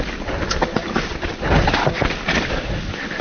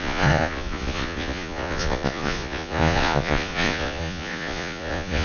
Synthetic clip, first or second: second